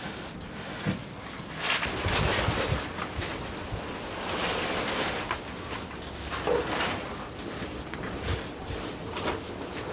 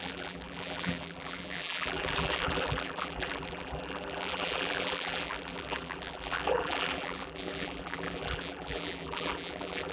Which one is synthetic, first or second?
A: second